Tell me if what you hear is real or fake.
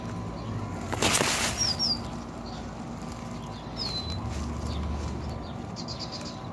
real